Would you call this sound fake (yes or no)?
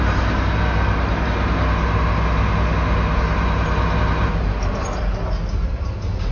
no